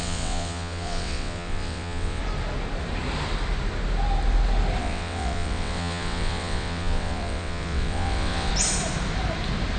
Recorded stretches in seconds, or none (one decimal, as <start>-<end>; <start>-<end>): 2.2-4.8; 8.5-9.8